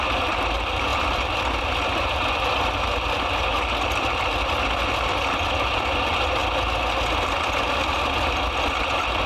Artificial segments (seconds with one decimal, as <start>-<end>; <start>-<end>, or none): 0.9-1.5